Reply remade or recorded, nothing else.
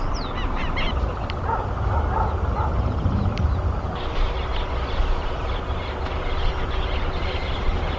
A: recorded